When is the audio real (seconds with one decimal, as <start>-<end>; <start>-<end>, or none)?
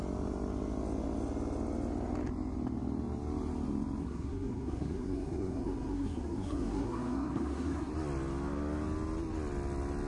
0.0-4.0; 7.9-10.1